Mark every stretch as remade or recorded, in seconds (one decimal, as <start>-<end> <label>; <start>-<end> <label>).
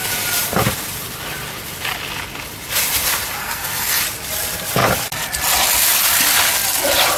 0.0-3.4 recorded; 3.4-4.0 remade; 4.0-7.2 recorded